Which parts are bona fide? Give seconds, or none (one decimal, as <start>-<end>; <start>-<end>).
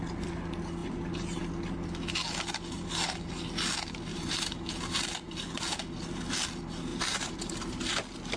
0.0-0.8; 1.4-4.1; 5.0-6.9; 7.9-8.4